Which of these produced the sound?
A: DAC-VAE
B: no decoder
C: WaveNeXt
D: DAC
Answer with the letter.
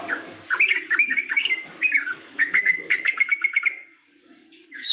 D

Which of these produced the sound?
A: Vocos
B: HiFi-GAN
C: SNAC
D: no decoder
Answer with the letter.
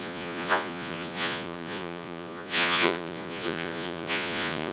A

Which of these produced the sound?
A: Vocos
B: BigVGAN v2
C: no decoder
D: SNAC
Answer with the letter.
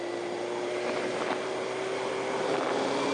C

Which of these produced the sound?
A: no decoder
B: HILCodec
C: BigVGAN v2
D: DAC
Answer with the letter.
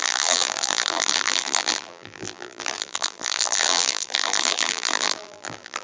C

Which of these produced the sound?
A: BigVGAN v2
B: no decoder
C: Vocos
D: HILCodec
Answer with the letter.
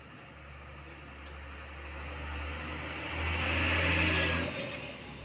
B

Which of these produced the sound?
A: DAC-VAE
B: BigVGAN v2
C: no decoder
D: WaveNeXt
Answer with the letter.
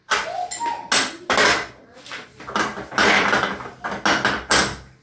C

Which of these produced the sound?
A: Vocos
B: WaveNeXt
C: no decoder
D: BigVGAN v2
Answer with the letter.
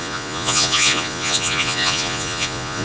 A